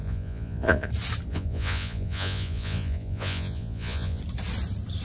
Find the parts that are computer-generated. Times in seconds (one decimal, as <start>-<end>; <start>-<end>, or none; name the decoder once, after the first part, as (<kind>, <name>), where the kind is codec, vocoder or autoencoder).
0.0-0.9 (vocoder, Vocos); 1.3-4.2